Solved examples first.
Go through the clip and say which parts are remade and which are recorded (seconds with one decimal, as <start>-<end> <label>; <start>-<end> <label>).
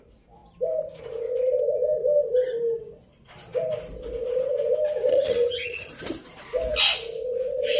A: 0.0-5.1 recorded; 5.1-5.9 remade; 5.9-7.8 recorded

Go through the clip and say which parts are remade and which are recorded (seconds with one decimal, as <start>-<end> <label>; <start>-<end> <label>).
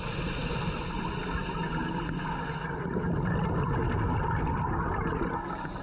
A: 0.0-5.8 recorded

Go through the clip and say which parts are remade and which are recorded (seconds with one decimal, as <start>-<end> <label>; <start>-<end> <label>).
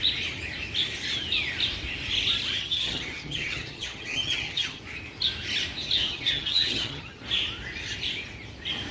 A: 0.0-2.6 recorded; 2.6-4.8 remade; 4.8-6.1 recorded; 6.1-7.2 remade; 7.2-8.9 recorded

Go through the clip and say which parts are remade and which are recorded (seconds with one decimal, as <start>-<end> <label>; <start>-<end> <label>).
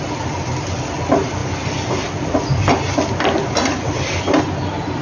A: 0.0-5.0 recorded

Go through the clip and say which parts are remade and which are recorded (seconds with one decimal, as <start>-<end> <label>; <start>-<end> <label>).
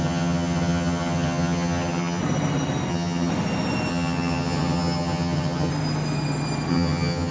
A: 0.0-2.2 remade; 2.2-2.9 recorded; 2.9-3.3 remade; 3.3-3.9 recorded; 3.9-5.7 remade; 5.7-6.7 recorded; 6.7-7.3 remade